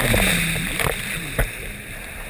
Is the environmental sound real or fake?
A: real